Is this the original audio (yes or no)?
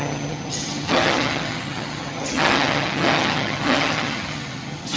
no